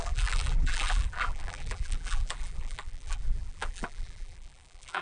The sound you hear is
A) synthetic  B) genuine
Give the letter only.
A